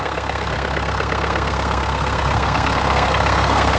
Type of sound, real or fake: fake